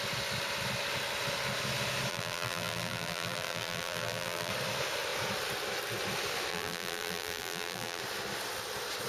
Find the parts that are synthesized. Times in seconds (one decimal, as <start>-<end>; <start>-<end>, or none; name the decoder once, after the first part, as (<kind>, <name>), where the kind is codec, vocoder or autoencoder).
2.1-4.5 (vocoder, BigVGAN v2); 6.5-8.0